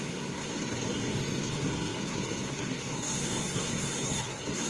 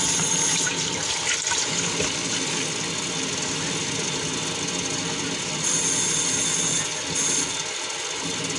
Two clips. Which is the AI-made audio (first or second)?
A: first